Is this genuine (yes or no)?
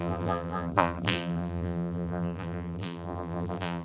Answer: no